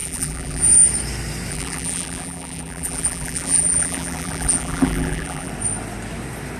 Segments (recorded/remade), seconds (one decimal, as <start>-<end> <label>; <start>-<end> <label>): 0.0-0.6 remade; 0.6-1.5 recorded; 1.5-5.5 remade; 5.5-6.6 recorded